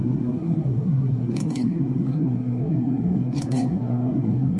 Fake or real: fake